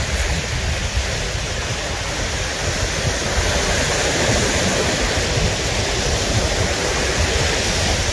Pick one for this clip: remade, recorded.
recorded